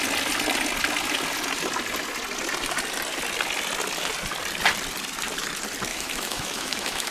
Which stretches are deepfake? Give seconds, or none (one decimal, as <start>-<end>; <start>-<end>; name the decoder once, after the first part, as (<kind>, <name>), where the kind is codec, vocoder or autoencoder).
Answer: 5.9-7.1 (autoencoder, DAC-VAE)